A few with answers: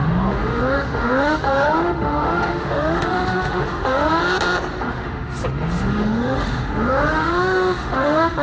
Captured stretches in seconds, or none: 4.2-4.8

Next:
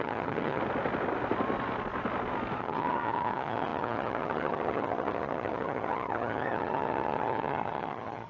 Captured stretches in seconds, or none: 0.6-2.6

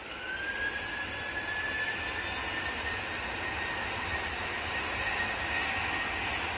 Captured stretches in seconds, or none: 0.0-6.6